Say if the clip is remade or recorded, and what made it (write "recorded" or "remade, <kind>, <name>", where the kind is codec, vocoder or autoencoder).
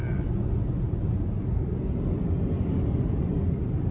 recorded